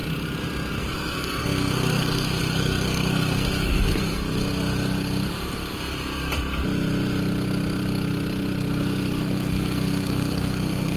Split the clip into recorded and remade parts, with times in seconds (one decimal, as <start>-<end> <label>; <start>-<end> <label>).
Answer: 0.0-0.8 recorded; 0.8-4.2 remade; 4.2-9.2 recorded; 9.2-11.0 remade